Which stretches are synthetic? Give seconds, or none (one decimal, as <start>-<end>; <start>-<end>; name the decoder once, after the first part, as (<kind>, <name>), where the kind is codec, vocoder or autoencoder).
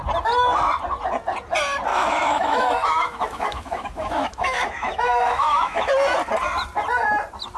1.9-5.9 (autoencoder, DAC-VAE)